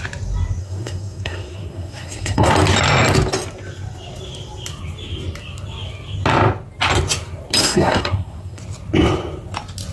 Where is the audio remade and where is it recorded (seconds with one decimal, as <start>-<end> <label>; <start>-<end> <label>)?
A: 0.0-0.6 recorded; 0.6-2.5 remade; 2.5-7.6 recorded; 7.6-8.6 remade; 8.6-9.9 recorded